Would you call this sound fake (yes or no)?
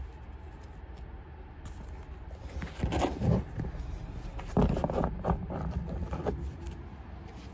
no